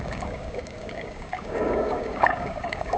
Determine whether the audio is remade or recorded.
remade